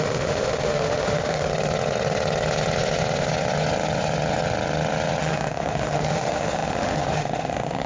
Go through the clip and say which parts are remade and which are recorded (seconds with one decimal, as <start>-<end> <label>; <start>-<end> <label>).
0.0-1.5 remade; 1.5-5.2 recorded; 5.2-7.9 remade